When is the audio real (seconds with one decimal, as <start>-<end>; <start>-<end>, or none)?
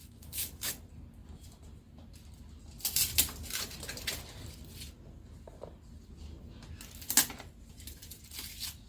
0.7-8.9